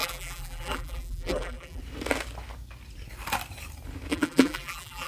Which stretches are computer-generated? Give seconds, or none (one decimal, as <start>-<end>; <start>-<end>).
0.0-1.8; 4.1-5.1